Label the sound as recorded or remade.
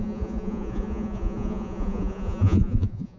remade